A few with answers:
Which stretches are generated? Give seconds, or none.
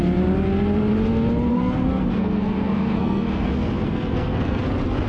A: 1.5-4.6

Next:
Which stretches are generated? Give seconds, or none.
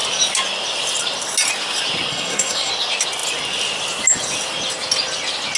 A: 2.1-2.7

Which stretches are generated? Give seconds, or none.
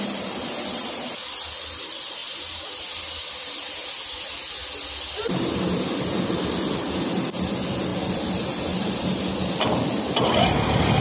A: none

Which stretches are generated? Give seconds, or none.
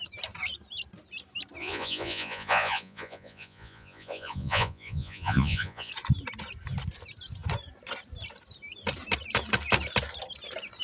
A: 1.6-5.9